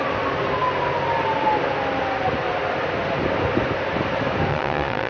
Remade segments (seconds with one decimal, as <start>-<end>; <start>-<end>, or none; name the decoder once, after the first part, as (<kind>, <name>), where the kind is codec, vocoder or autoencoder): 4.5-5.1 (vocoder, Vocos)